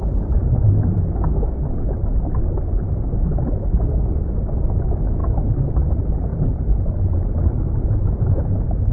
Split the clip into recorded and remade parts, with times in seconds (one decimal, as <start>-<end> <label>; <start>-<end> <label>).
0.0-2.0 remade; 2.0-2.8 recorded; 2.8-5.2 remade; 5.2-5.7 recorded; 5.7-6.3 remade; 6.3-7.5 recorded; 7.5-8.9 remade